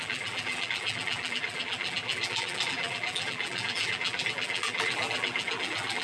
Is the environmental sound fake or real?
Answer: fake